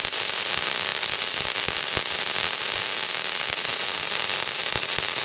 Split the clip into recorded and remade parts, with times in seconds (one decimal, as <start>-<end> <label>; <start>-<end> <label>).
0.0-5.2 recorded